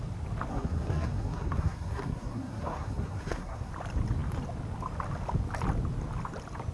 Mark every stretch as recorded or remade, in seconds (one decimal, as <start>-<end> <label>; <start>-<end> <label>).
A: 0.0-0.5 recorded; 0.5-3.7 remade; 3.7-6.7 recorded